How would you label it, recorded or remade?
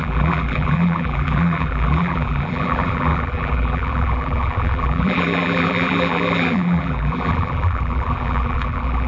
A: remade